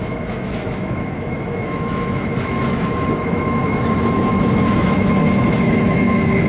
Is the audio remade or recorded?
remade